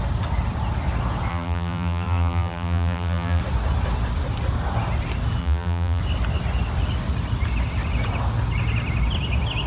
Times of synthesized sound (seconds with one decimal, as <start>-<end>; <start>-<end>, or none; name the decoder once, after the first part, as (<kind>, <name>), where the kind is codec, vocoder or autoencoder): 1.3-3.4 (vocoder, BigVGAN v2); 5.4-6.0